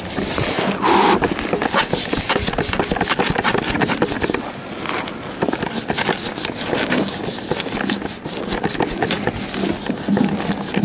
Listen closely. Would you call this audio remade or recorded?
recorded